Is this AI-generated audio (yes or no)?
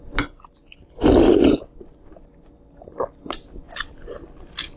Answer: no